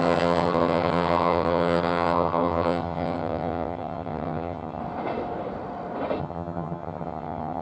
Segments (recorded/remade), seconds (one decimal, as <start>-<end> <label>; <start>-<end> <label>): 0.0-4.8 remade; 4.8-6.2 recorded; 6.2-7.6 remade